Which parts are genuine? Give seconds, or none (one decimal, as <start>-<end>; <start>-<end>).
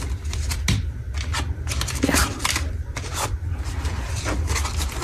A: 0.0-2.2